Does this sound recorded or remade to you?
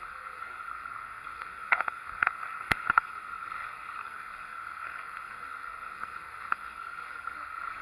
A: remade